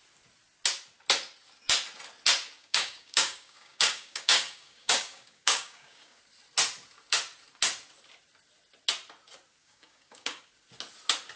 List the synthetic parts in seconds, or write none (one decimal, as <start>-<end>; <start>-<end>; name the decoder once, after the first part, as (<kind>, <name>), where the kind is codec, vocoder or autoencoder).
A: 2.6-6.2 (codec, DAC); 9.6-10.5